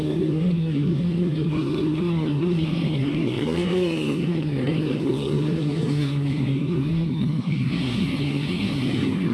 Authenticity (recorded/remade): remade